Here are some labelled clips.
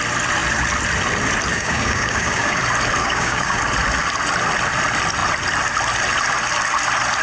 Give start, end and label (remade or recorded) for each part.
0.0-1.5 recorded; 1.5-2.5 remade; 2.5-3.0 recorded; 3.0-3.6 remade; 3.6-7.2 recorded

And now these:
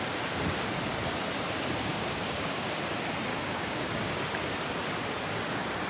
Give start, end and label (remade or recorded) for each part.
0.0-1.9 recorded; 1.9-2.7 remade; 2.7-3.3 recorded; 3.3-4.2 remade; 4.2-5.9 recorded

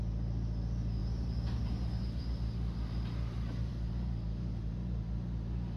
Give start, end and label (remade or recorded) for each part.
0.0-3.7 recorded; 3.7-4.5 remade; 4.5-5.8 recorded

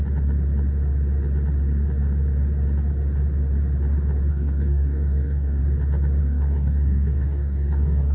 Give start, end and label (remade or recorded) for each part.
0.0-4.3 recorded; 4.3-5.6 remade; 5.6-6.2 recorded; 6.2-8.1 remade

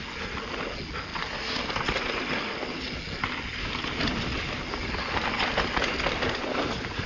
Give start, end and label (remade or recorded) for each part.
0.0-7.1 recorded

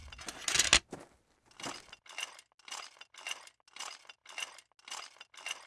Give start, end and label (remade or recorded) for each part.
0.0-5.7 recorded